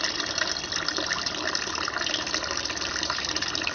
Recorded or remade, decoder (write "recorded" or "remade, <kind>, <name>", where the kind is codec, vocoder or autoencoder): remade, vocoder, BigVGAN v2